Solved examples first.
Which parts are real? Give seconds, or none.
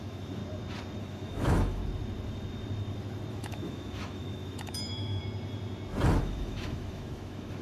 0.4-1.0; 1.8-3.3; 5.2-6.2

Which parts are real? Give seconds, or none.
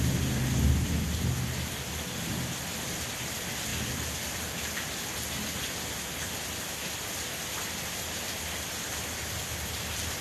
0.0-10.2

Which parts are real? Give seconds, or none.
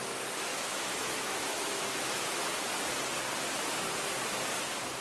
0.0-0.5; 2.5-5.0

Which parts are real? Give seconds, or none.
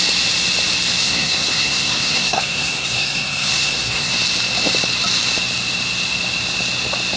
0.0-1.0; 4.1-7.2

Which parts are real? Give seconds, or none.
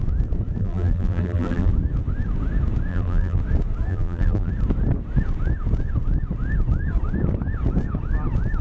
0.0-0.6; 1.7-2.9; 3.4-3.9; 4.5-8.6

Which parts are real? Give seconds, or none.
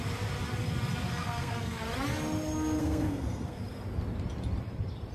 0.0-1.1; 1.8-2.8; 3.6-5.1